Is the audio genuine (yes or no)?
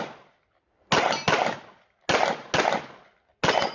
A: yes